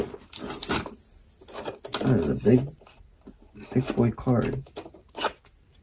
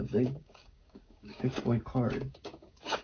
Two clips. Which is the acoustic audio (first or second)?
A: first